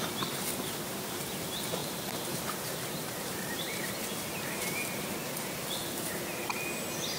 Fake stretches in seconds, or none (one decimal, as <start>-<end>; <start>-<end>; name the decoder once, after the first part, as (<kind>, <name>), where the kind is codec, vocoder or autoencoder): 1.8-5.1 (vocoder, BigVGAN v2)